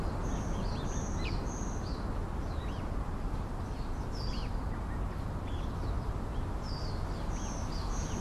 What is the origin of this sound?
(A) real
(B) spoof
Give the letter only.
A